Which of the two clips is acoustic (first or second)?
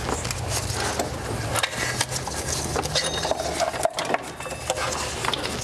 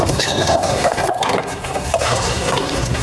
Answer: first